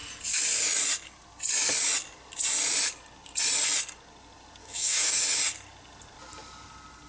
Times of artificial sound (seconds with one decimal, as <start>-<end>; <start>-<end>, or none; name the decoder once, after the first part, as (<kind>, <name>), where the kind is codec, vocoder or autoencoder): 4.6-5.2 (autoencoder, DAC-VAE)